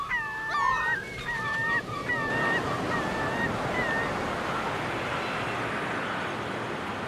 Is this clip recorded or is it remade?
recorded